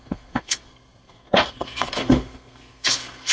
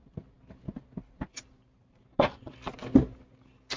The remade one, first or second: first